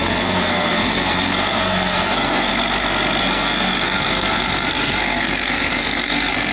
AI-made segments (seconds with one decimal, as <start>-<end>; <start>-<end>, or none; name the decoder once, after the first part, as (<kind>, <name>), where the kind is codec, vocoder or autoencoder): 0.0-2.5 (codec, SNAC); 3.2-6.5